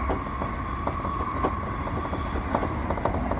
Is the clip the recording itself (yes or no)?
yes